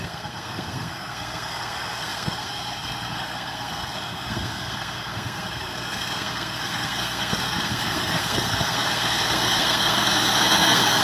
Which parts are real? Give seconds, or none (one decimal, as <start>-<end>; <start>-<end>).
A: none